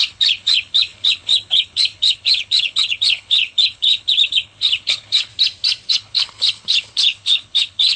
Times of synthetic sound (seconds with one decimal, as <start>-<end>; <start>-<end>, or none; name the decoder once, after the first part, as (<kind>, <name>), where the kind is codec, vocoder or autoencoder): 0.0-5.3 (codec, HILCodec); 5.9-8.0